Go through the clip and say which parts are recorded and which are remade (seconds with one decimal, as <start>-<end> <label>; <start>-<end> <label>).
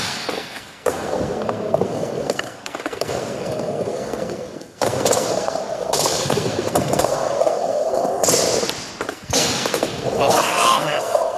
0.0-8.0 remade; 8.0-9.1 recorded; 9.1-11.4 remade